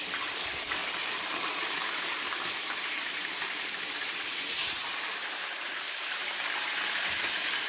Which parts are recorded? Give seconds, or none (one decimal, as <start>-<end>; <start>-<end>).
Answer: none